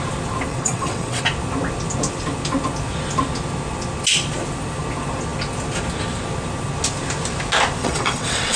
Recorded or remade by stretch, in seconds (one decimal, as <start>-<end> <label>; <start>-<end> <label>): 0.0-0.5 recorded; 0.5-1.2 remade; 1.2-7.8 recorded; 7.8-8.6 remade